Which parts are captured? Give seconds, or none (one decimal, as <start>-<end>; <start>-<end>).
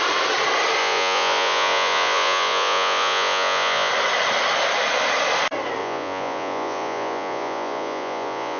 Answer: 0.0-0.8; 3.9-5.8